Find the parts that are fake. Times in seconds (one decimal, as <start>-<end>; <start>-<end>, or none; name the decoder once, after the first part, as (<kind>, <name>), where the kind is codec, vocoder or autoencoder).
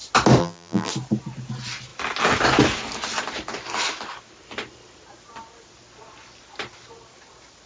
0.4-0.9 (vocoder, BigVGAN v2)